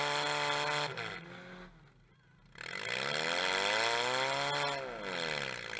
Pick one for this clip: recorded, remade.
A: recorded